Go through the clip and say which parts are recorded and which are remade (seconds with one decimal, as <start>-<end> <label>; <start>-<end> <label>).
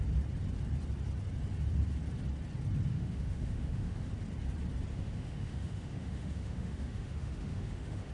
0.0-2.9 recorded; 2.9-4.1 remade; 4.1-4.9 recorded; 4.9-8.1 remade